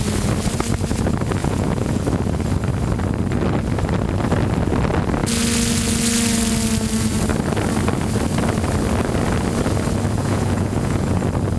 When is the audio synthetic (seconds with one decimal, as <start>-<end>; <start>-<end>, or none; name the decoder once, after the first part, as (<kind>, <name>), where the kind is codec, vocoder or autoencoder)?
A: 1.4-2.0 (vocoder, Vocos); 10.2-11.2